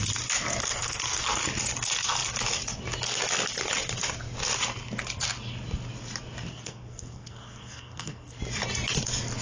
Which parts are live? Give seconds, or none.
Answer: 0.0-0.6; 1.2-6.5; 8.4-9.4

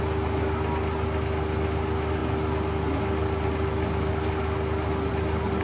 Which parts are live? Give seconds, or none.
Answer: 0.0-5.6

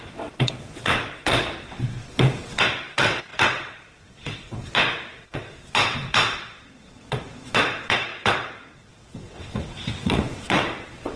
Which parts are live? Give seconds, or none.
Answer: none

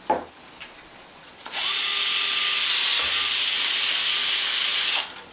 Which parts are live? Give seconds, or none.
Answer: 0.0-0.6; 1.9-5.3

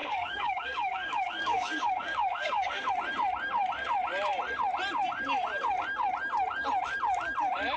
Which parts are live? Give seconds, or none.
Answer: 2.9-7.8

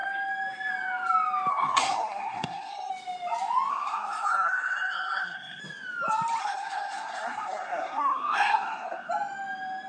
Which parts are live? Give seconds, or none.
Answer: 0.0-1.5; 2.9-3.7; 5.6-6.4; 9.1-9.9